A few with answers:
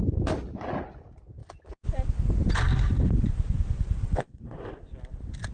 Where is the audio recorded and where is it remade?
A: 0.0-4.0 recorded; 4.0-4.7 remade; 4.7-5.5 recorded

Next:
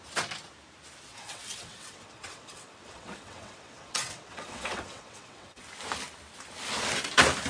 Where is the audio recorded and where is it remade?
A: 0.0-1.1 recorded; 1.1-5.6 remade; 5.6-7.5 recorded

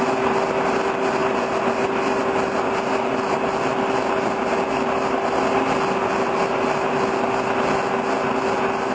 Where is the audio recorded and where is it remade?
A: 0.0-8.9 recorded